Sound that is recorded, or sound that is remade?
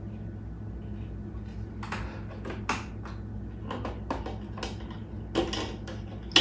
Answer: recorded